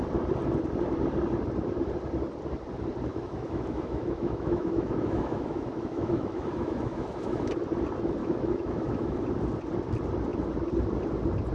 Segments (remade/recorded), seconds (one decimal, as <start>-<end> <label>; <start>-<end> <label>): 0.0-3.1 recorded; 3.1-7.5 remade; 7.5-8.2 recorded; 8.2-9.2 remade; 9.2-11.5 recorded